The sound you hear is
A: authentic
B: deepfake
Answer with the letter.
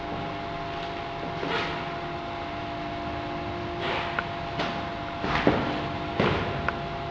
A